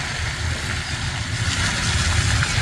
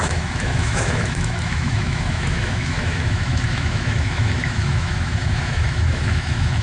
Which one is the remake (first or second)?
second